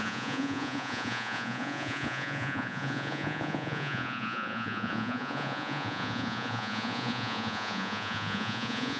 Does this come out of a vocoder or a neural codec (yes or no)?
yes